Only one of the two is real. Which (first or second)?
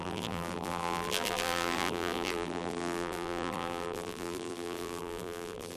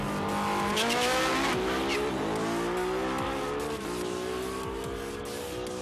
second